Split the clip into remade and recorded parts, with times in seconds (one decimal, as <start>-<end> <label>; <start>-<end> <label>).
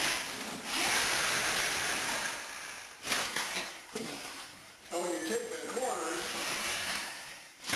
0.0-3.2 recorded; 3.2-4.8 remade; 4.8-6.6 recorded; 6.6-7.8 remade